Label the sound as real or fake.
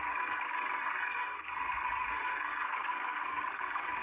fake